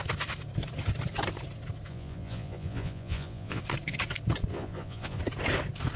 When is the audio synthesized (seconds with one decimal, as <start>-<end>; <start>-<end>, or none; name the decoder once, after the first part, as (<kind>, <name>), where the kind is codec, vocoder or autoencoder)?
1.9-3.6 (vocoder, Vocos); 4.5-5.2